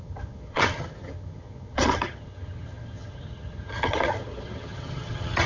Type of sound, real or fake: fake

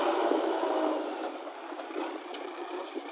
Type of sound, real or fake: fake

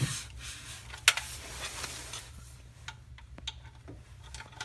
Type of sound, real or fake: real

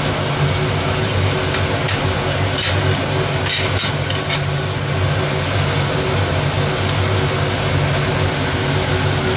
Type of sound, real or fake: real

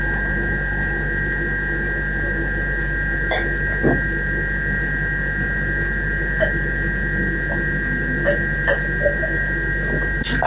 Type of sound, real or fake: real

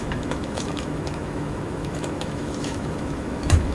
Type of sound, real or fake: fake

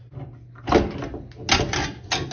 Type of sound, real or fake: real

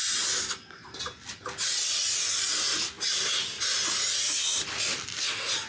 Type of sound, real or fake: real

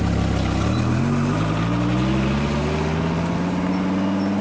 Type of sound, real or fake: real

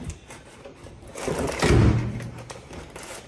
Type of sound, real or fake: real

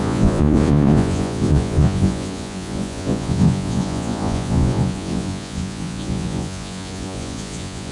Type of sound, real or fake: fake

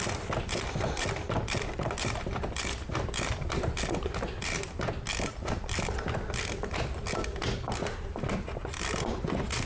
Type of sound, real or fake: fake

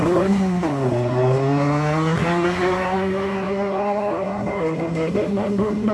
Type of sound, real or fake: fake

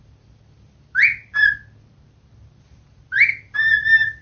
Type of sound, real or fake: real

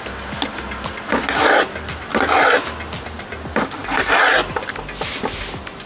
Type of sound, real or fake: real